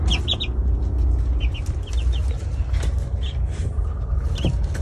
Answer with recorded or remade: recorded